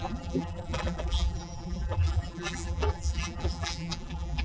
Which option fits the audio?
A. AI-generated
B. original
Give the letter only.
A